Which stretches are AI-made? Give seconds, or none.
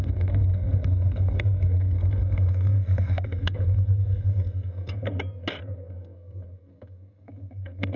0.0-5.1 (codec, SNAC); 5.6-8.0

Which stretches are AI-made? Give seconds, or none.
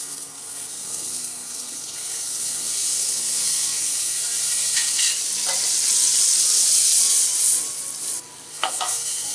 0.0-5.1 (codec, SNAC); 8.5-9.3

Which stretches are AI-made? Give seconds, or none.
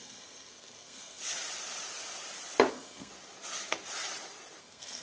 0.0-1.2 (codec, SNAC); 2.7-3.1; 4.6-5.0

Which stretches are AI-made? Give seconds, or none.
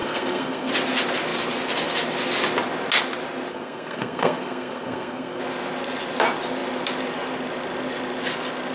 0.0-0.7 (codec, SNAC); 3.5-5.4